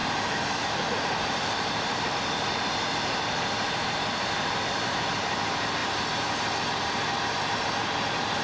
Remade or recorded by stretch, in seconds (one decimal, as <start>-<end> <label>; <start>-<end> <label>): 0.0-5.8 remade; 5.8-7.4 recorded; 7.4-8.4 remade